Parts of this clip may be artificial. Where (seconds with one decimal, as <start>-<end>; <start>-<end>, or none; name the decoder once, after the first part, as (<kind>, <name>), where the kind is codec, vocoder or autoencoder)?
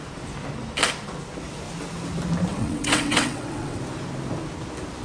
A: 2.5-3.8 (vocoder, WaveNeXt)